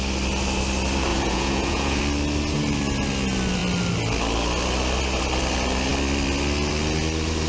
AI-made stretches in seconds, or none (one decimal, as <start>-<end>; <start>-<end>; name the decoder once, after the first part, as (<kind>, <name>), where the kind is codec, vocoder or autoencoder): 1.1-2.0 (vocoder, Vocos)